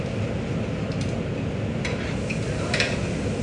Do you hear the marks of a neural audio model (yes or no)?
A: no